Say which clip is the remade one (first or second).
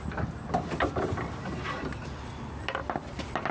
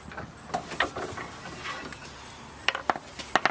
first